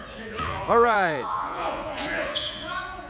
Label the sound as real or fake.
fake